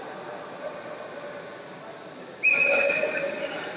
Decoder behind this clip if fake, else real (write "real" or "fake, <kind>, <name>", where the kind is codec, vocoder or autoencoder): real